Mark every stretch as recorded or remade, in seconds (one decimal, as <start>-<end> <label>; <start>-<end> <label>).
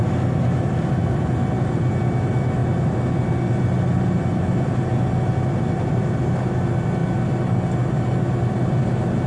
0.0-9.3 recorded